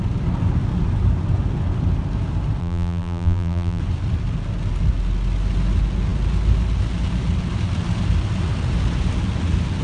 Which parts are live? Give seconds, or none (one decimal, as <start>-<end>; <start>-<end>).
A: 0.0-2.6; 3.8-9.8